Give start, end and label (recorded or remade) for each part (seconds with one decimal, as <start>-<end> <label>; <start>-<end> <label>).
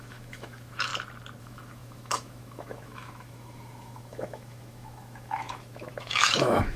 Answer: 0.0-0.9 remade; 0.9-1.4 recorded; 1.4-6.8 remade